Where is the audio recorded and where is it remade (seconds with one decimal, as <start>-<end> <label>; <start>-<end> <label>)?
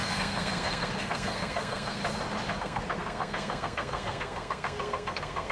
0.0-2.0 remade; 2.0-2.6 recorded; 2.6-5.5 remade